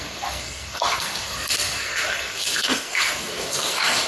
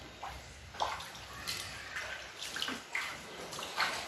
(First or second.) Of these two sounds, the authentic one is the second